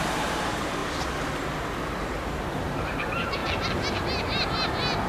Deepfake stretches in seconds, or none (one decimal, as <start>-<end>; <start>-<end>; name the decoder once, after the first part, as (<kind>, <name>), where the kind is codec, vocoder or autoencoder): 0.0-0.8 (vocoder, BigVGAN v2); 2.5-3.4